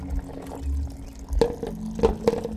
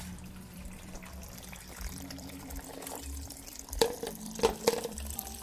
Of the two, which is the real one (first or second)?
first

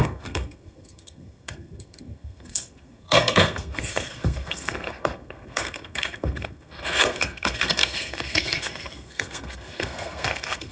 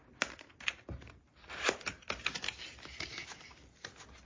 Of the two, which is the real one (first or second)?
second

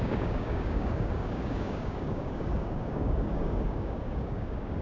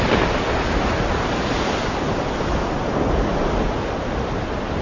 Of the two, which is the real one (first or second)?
second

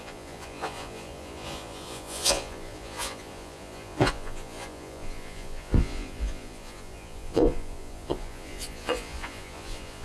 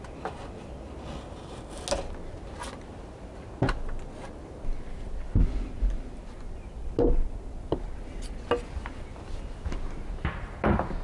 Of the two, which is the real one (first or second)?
second